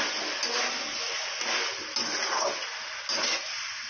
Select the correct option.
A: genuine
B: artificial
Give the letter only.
A